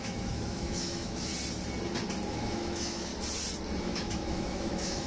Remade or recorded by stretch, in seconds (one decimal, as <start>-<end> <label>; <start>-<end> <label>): 0.0-1.3 remade; 1.3-2.3 recorded; 2.3-3.1 remade; 3.1-3.8 recorded; 3.8-5.1 remade